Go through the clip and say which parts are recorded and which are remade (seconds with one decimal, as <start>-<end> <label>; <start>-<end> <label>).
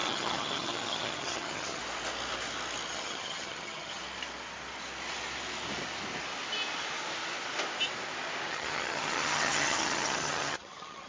0.0-1.8 remade; 1.8-2.9 recorded; 2.9-4.0 remade; 4.0-8.5 recorded; 8.5-11.1 remade